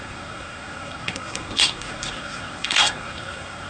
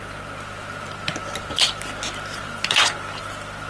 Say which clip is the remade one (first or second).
first